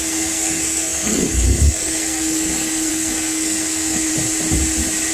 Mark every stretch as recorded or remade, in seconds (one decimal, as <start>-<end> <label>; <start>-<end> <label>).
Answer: 0.0-4.1 remade; 4.1-5.1 recorded